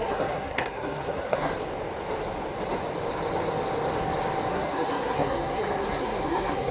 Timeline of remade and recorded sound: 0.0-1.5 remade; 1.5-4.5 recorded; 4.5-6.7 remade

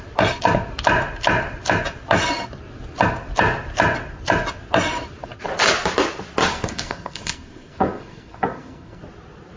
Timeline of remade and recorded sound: 0.0-6.5 recorded; 6.5-9.0 remade; 9.0-9.6 recorded

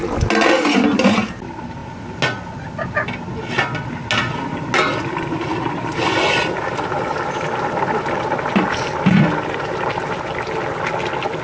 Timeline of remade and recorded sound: 0.0-11.4 recorded

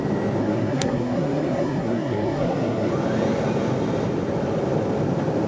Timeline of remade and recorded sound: 0.0-0.4 recorded; 0.4-2.9 remade; 2.9-5.5 recorded

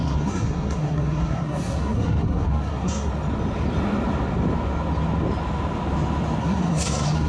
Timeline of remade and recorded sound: 0.0-3.1 remade; 3.1-6.4 recorded; 6.4-7.3 remade